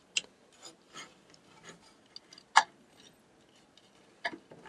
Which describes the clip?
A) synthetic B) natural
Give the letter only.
B